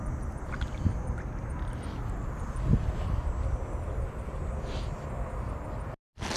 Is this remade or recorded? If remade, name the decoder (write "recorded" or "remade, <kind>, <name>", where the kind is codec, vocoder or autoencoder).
recorded